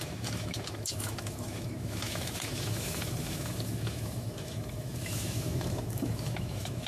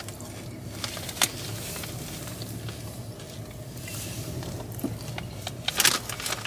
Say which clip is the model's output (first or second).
first